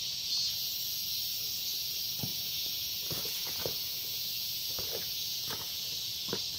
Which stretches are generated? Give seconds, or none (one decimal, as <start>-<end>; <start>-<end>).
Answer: 2.3-5.9

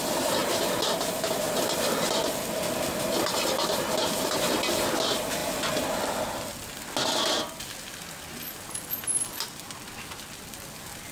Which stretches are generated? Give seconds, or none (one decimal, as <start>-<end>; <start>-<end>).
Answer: none